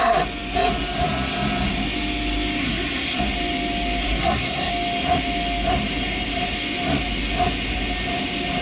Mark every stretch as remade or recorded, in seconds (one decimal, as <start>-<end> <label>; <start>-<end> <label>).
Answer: 0.0-2.6 recorded; 2.6-3.2 remade; 3.2-4.0 recorded; 4.0-4.7 remade; 4.7-8.6 recorded

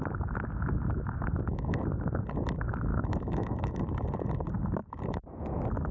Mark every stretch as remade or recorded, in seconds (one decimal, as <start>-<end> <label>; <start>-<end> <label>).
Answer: 0.0-2.9 recorded; 2.9-3.8 remade; 3.8-5.9 recorded

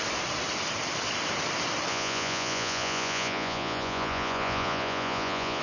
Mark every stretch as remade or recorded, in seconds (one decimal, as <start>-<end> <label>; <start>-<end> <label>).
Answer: 0.0-1.9 recorded; 1.9-5.6 remade

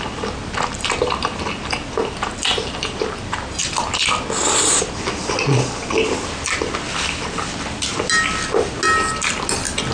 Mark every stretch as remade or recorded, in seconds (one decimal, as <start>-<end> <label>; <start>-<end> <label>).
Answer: 0.0-9.9 recorded

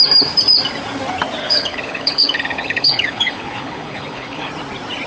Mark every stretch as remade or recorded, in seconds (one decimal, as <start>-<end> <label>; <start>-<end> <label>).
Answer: 0.0-1.4 recorded; 1.4-4.5 remade; 4.5-5.1 recorded

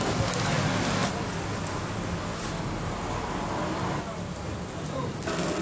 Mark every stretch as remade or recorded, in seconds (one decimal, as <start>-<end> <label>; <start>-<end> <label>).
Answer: 0.0-5.6 recorded

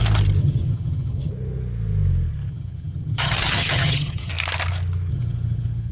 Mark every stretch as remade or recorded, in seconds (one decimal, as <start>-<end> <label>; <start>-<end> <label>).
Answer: 0.0-0.4 recorded; 0.4-1.3 remade; 1.3-2.5 recorded; 2.5-4.3 remade; 4.3-5.1 recorded; 5.1-5.9 remade

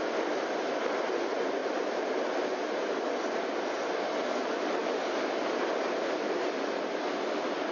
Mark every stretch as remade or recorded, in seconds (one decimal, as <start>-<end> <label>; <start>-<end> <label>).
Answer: 0.0-4.8 remade; 4.8-5.5 recorded; 5.5-7.7 remade